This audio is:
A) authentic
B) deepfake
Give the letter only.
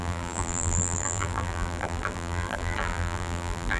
B